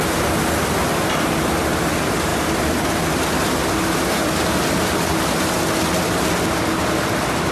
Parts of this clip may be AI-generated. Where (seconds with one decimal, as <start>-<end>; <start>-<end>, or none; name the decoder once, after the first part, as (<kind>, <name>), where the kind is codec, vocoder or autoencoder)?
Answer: none